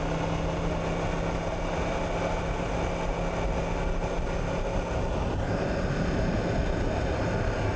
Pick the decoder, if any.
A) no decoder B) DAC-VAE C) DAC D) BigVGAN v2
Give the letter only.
A